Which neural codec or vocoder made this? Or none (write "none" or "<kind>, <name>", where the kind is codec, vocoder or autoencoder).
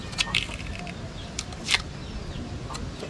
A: none